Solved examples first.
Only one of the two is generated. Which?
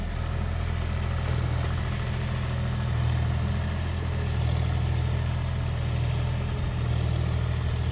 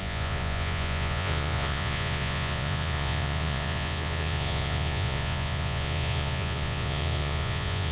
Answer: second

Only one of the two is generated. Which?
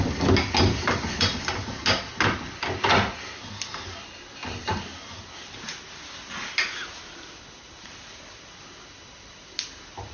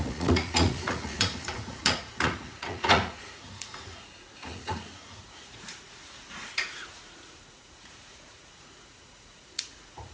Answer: second